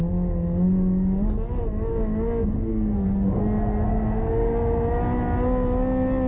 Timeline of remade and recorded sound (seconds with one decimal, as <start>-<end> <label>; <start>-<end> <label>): 0.0-2.7 recorded; 2.7-3.4 remade; 3.4-6.3 recorded